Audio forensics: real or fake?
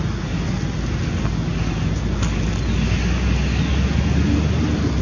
real